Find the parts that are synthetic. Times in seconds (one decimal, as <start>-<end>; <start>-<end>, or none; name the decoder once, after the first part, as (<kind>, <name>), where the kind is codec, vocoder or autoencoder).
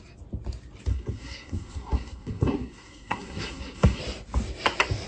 0.9-4.0 (codec, SNAC)